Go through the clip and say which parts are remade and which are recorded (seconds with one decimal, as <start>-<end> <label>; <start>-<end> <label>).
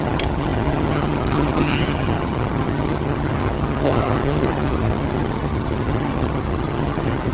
0.0-7.3 remade